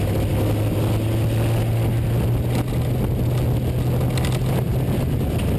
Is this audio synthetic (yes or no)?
no